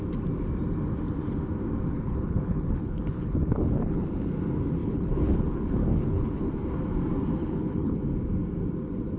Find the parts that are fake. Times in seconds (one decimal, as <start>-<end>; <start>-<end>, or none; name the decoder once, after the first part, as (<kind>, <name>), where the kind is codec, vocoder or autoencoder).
1.9-4.3 (codec, HILCodec); 4.8-6.5; 7.4-8.0